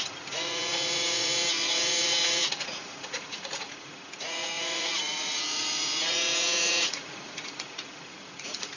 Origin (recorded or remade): remade